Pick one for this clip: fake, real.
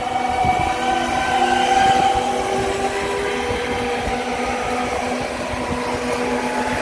real